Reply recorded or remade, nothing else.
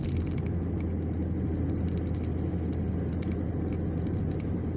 recorded